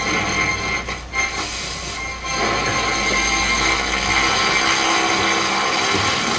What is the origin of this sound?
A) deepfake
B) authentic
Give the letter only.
B